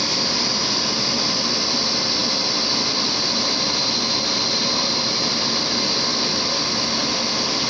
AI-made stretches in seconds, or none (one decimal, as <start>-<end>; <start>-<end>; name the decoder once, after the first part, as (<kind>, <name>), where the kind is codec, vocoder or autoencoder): none